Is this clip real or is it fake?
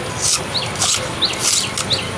real